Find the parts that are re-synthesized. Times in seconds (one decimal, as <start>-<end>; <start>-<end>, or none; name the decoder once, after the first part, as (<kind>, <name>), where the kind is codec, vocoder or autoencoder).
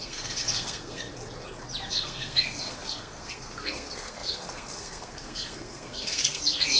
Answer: 0.0-1.1 (codec, SNAC); 1.9-6.8